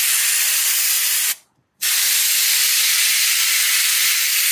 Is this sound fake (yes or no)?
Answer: yes